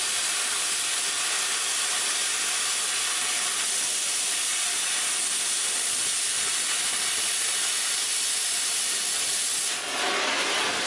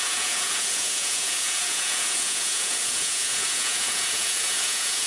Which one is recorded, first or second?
first